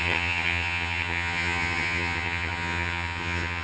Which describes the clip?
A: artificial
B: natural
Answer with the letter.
A